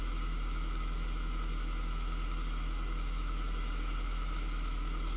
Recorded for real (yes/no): no